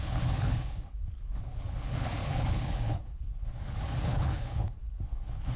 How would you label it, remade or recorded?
remade